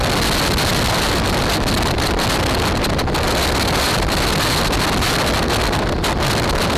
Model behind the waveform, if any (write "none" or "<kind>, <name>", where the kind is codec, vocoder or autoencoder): none